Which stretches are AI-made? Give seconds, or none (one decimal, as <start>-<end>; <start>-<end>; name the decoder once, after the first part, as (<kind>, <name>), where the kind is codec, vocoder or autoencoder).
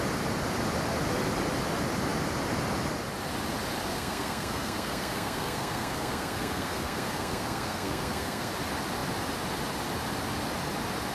3.9-8.5 (codec, SNAC)